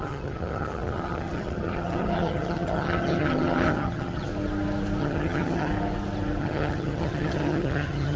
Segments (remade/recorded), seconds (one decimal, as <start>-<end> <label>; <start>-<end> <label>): 0.0-4.3 remade; 4.3-5.0 recorded; 5.0-5.7 remade; 5.7-6.4 recorded; 6.4-8.2 remade